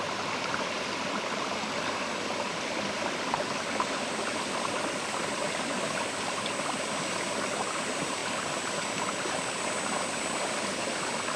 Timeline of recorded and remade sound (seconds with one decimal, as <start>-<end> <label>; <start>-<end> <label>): 0.0-2.5 recorded; 2.5-7.6 remade; 7.6-8.2 recorded; 8.2-10.8 remade; 10.8-11.4 recorded